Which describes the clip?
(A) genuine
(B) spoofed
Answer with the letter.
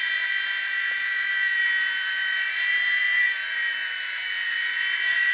B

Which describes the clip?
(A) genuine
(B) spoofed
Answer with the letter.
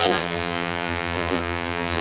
B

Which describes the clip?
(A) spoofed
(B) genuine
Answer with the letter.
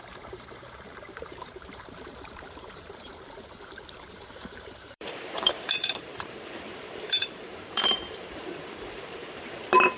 A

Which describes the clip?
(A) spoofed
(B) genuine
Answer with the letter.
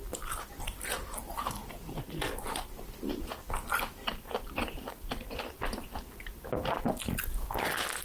A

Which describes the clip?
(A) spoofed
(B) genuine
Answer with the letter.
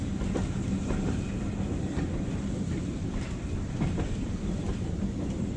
B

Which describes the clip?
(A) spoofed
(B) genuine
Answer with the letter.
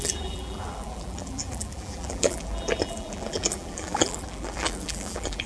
A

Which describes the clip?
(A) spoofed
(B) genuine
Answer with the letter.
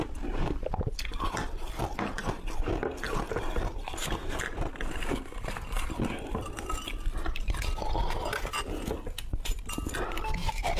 B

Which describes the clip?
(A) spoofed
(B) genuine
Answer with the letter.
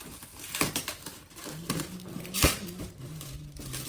A